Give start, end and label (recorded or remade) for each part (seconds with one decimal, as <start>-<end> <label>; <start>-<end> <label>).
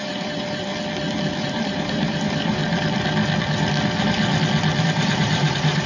0.0-0.7 remade; 0.7-1.4 recorded; 1.4-2.6 remade; 2.6-4.8 recorded; 4.8-5.9 remade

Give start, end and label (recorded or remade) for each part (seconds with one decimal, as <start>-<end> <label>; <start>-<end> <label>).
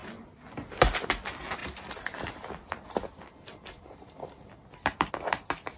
0.0-1.6 recorded; 1.6-5.1 remade; 5.1-5.8 recorded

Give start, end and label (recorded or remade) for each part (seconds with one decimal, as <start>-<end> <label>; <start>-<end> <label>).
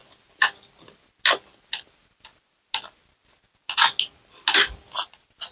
0.0-5.5 recorded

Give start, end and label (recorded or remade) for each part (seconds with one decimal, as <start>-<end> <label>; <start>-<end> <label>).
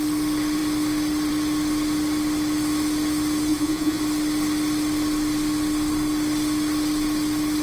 0.0-3.5 recorded; 3.5-4.0 remade; 4.0-7.6 recorded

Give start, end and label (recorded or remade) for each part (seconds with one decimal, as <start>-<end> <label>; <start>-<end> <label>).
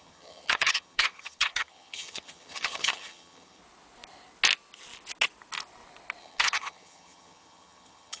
0.0-3.6 remade; 3.6-6.2 recorded; 6.2-8.2 remade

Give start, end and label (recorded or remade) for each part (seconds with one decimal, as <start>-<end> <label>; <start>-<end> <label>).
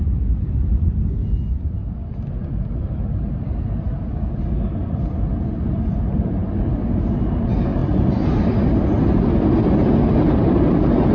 0.0-11.1 recorded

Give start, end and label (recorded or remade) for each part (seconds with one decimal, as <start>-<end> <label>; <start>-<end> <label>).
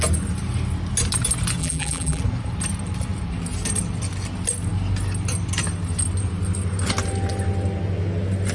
0.0-1.6 recorded; 1.6-2.2 remade; 2.2-8.5 recorded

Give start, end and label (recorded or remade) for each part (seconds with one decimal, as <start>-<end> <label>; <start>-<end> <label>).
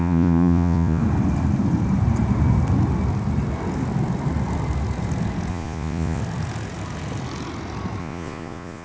0.0-1.0 remade; 1.0-5.5 recorded; 5.5-6.2 remade; 6.2-8.0 recorded; 8.0-8.8 remade